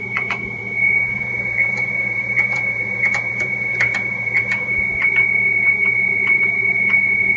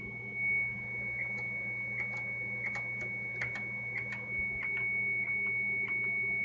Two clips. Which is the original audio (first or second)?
second